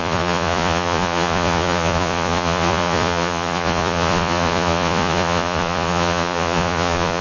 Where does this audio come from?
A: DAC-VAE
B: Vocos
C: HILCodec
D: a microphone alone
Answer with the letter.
B